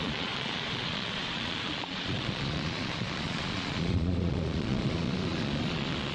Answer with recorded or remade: remade